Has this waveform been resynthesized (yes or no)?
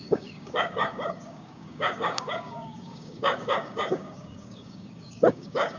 yes